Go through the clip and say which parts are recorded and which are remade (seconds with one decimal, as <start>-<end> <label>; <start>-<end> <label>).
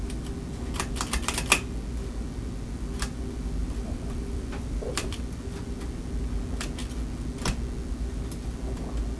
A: 0.0-3.6 recorded; 3.6-5.2 remade; 5.2-9.2 recorded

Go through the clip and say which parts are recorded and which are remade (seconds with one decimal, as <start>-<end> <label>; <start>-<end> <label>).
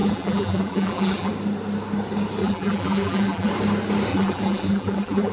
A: 0.0-1.3 remade; 1.3-2.4 recorded; 2.4-3.5 remade; 3.5-4.1 recorded; 4.1-5.3 remade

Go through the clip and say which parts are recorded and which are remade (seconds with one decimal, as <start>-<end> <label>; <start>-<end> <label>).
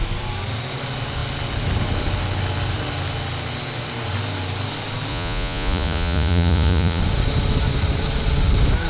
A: 0.0-5.1 recorded; 5.1-7.0 remade; 7.0-8.9 recorded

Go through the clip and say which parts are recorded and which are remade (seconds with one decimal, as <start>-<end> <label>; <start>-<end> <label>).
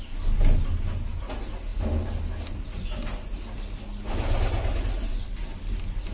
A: 0.0-6.1 recorded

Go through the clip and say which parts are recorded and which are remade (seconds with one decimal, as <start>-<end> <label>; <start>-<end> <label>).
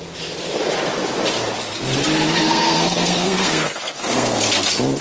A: 0.0-2.4 recorded; 2.4-4.4 remade; 4.4-5.0 recorded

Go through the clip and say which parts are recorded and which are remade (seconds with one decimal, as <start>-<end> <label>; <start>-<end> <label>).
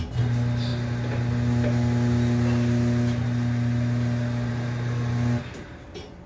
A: 0.0-6.3 recorded